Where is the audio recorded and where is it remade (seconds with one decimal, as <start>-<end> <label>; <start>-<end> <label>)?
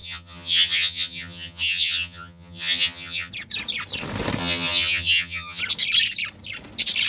0.0-3.3 remade; 3.3-4.4 recorded; 4.4-5.6 remade; 5.6-7.1 recorded